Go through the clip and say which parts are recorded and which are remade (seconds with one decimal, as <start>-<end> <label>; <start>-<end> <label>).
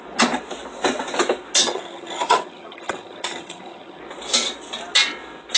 0.0-1.6 recorded; 1.6-4.0 remade; 4.0-5.6 recorded